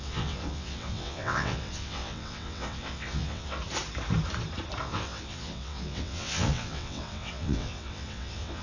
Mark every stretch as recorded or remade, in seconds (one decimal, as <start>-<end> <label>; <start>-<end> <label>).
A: 0.0-3.6 remade; 3.6-4.8 recorded; 4.8-8.6 remade